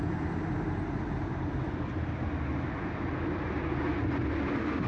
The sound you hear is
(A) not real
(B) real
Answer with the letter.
B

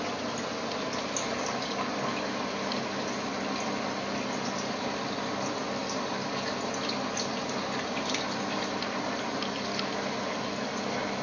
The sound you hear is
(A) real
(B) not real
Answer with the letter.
A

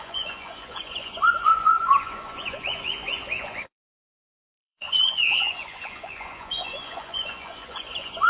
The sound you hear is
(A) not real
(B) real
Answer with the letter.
A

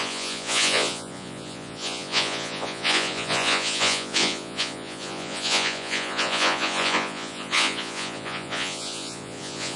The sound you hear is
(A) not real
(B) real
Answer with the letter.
A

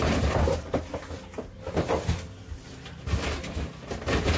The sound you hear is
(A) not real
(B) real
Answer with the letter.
B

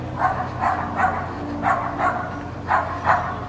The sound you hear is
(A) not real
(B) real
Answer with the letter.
B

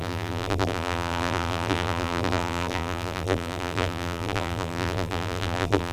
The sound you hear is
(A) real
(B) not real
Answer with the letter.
B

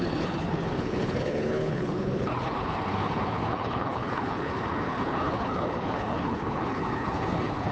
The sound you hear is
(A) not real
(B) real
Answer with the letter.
A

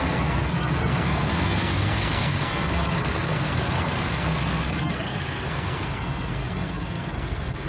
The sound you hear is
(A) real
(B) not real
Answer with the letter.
B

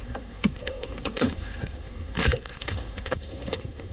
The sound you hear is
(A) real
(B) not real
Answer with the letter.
B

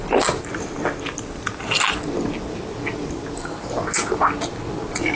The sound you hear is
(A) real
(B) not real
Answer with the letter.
A